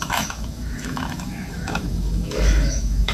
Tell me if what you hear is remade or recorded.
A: remade